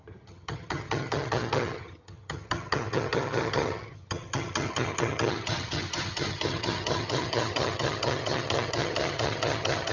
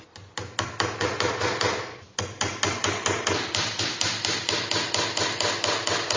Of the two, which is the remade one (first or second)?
first